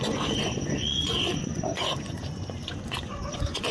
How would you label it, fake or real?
fake